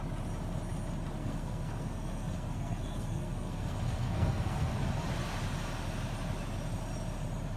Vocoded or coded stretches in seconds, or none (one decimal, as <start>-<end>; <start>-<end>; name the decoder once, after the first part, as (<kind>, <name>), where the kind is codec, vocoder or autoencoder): 1.2-4.7 (codec, SNAC)